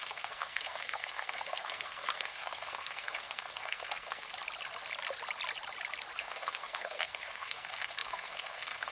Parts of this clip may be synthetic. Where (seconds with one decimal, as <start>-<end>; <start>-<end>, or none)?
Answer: 0.0-4.3; 6.2-8.9